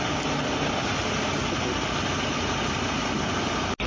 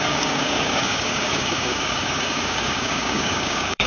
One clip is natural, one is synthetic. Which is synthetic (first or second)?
second